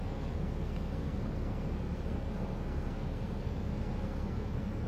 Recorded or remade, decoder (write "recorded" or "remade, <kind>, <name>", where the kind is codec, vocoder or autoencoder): remade, codec, SNAC